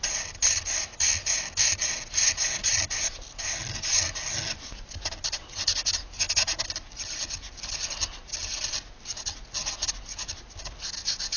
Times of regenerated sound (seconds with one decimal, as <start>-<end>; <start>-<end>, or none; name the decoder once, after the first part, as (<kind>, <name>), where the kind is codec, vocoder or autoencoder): none